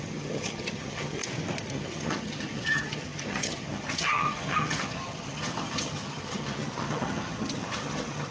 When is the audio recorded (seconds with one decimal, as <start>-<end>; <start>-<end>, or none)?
1.2-1.7